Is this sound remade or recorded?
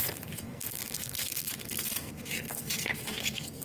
remade